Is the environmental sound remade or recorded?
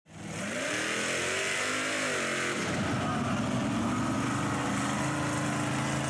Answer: recorded